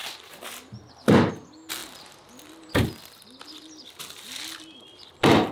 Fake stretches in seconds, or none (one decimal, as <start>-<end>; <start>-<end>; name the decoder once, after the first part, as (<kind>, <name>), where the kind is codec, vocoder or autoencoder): none